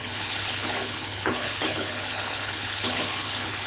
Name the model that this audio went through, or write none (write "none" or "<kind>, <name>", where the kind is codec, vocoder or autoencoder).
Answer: codec, HILCodec